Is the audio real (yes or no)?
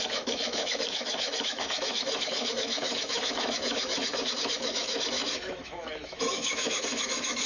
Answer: no